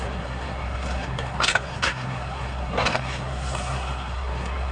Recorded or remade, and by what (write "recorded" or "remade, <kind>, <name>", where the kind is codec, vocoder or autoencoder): remade, codec, SNAC